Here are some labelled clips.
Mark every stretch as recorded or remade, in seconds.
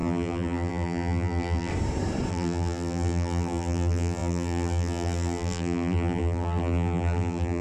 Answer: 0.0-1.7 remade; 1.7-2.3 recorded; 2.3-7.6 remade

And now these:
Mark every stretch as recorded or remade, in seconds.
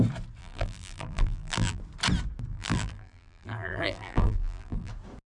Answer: 0.0-0.4 recorded; 0.4-1.8 remade; 1.8-2.5 recorded; 2.5-4.9 remade; 4.9-5.4 recorded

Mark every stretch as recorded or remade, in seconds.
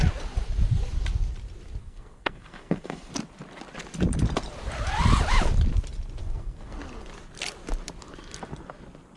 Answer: 0.0-1.8 recorded; 1.8-3.1 remade; 3.1-6.2 recorded; 6.2-6.8 remade; 6.8-9.2 recorded